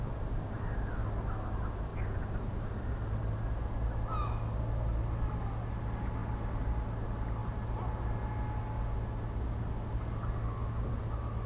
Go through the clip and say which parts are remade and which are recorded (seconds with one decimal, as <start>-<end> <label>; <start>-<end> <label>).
0.0-1.9 recorded; 1.9-2.9 remade; 2.9-11.5 recorded